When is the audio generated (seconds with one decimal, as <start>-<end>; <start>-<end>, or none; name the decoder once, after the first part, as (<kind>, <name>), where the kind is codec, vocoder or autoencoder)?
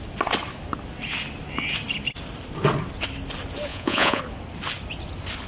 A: 3.7-4.2 (vocoder, Vocos)